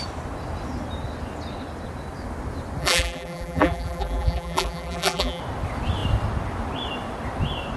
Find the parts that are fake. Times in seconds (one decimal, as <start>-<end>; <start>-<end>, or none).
2.8-5.4